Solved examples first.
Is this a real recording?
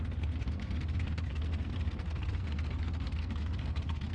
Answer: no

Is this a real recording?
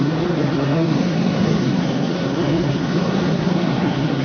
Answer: no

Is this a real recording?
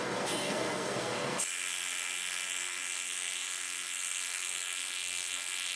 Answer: no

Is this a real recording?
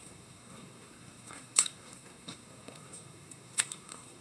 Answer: no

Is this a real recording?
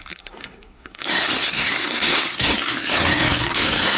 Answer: no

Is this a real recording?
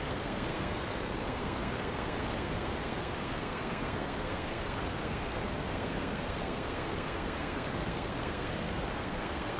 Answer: no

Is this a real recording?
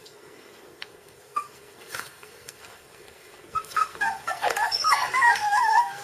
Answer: no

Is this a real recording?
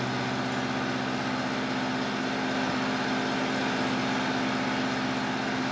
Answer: yes